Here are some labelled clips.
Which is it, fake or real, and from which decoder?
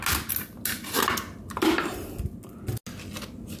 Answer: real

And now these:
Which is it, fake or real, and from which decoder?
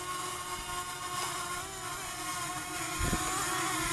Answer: real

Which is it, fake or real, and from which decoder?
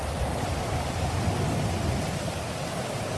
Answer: real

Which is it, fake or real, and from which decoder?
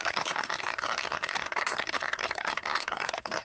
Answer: fake, codec, SNAC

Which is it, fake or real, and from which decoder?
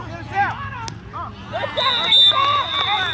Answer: real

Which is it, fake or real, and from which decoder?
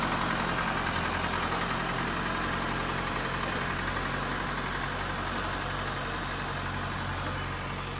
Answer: real